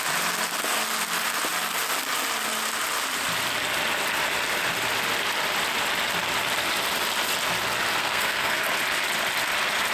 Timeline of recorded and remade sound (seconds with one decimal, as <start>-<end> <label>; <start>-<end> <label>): 0.0-8.0 recorded; 8.0-8.6 remade; 8.6-9.9 recorded